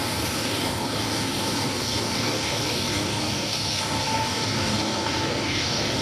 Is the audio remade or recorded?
remade